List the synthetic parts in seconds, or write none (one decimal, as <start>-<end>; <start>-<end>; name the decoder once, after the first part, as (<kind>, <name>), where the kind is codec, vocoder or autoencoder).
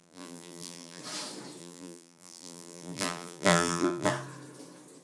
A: 0.0-1.0 (vocoder, BigVGAN v2); 1.6-4.1